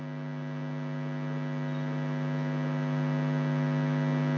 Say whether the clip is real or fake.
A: real